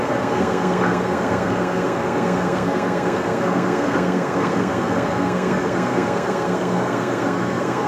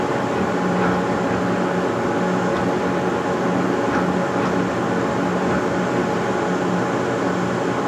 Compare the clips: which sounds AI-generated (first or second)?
first